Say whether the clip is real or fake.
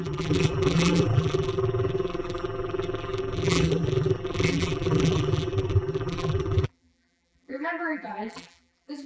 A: fake